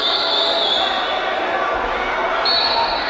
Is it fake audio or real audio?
real